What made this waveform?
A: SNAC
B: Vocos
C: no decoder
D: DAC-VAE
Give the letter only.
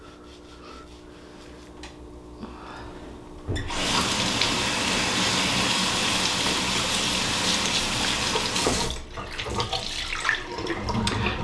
C